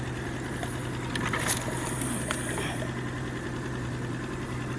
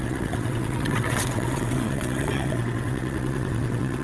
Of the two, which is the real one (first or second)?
first